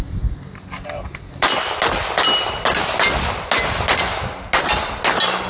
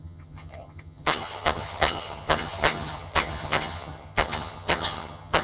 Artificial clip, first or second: second